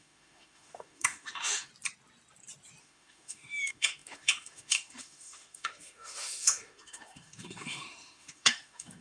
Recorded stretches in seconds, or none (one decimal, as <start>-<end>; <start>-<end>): 1.7-2.8